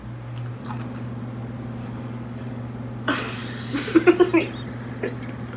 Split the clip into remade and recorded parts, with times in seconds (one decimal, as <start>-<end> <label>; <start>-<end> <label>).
0.0-1.8 recorded; 1.8-2.6 remade; 2.6-5.6 recorded